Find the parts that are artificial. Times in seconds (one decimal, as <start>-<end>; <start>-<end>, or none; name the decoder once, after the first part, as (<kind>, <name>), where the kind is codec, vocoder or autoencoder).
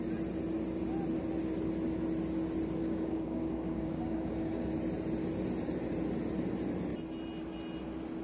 2.8-4.7 (codec, DAC)